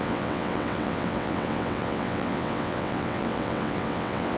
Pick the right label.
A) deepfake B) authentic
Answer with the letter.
A